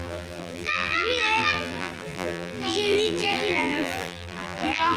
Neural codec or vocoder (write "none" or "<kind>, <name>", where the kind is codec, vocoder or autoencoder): vocoder, BigVGAN v2